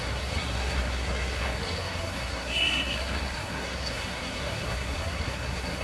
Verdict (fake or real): fake